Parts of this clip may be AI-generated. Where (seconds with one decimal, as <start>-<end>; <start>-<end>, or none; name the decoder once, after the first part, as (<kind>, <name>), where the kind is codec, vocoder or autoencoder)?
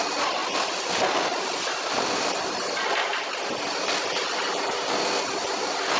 none